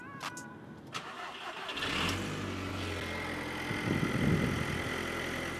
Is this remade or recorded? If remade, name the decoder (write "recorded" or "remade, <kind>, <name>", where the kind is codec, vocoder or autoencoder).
recorded